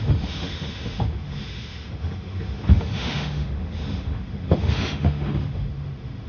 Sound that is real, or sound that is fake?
fake